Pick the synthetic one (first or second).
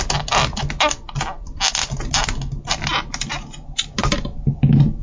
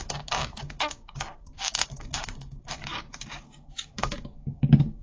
second